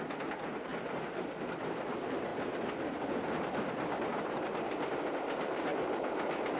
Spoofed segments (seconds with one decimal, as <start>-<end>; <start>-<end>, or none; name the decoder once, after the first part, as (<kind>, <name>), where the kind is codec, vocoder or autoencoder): 0.0-0.7 (vocoder, BigVGAN v2); 1.8-2.3; 5.1-6.6